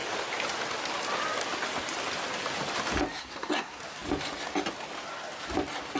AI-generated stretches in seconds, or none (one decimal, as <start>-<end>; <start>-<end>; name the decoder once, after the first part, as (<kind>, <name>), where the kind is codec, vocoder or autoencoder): 3.2-3.8 (codec, SNAC)

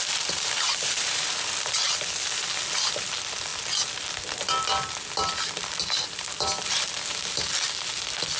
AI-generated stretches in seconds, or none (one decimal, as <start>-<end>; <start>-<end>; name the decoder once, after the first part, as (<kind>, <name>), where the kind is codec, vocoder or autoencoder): none

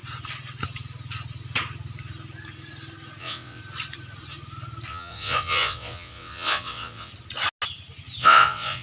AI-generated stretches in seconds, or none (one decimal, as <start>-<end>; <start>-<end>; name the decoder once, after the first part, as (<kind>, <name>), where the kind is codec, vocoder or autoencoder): 3.2-3.6 (vocoder, WaveNeXt); 4.9-7.1; 8.2-8.8

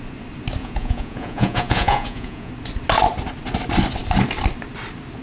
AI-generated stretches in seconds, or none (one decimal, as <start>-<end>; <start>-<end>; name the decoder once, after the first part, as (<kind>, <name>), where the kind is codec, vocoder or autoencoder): 0.6-2.5 (vocoder, Vocos)

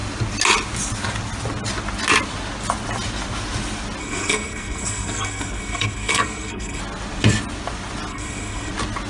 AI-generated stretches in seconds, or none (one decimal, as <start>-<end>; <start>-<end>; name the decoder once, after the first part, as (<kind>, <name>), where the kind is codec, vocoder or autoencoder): 4.0-6.8 (codec, SNAC); 8.1-8.7

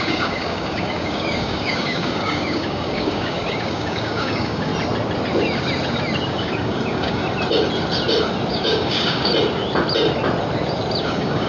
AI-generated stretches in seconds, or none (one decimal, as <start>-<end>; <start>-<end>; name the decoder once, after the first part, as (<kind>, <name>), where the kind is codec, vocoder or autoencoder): 0.0-4.7 (codec, DAC); 6.3-7.2; 8.5-9.3; 11.0-11.5

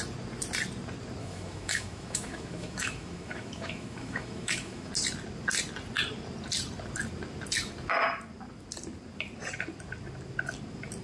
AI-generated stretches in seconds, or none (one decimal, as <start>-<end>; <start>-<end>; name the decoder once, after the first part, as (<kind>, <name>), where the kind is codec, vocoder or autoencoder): 1.2-4.9 (autoencoder, DAC-VAE)

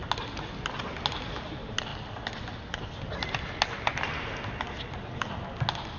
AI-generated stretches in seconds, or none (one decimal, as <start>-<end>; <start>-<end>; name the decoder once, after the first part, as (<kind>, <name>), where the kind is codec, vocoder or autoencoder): none